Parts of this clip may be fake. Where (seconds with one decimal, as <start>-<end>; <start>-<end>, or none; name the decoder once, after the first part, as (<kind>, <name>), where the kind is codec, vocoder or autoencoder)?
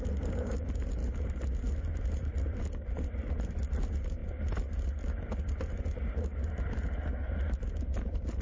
0.0-4.2 (vocoder, BigVGAN v2); 7.2-8.4